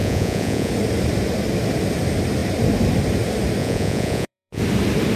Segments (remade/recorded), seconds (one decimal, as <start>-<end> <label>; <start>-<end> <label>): 0.0-0.7 remade; 0.7-3.6 recorded; 3.6-4.6 remade; 4.6-5.2 recorded